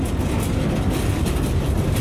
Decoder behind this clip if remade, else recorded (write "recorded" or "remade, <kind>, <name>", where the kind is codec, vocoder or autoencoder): recorded